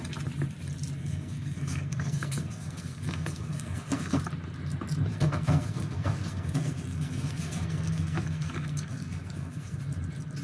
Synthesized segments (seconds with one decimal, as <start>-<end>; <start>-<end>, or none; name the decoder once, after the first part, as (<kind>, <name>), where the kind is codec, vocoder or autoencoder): 1.0-4.2 (codec, SNAC); 5.1-9.8